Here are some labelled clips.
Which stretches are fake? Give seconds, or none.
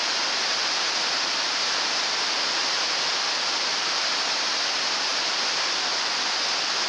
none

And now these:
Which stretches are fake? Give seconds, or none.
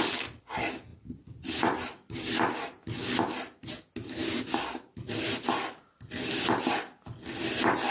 none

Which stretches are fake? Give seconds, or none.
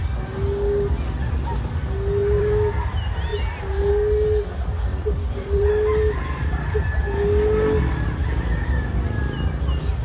2.2-2.9; 4.9-5.7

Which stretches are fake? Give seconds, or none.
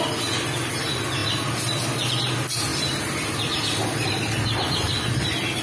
1.2-2.3; 2.7-5.1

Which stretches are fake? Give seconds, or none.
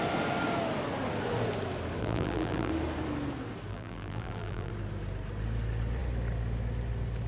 2.0-2.7; 3.7-4.7